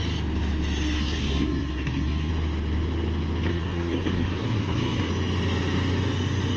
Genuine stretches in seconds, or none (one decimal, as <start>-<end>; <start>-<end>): 0.0-1.0; 2.3-3.5; 5.1-6.6